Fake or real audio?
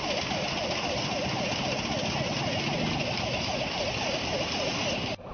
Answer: real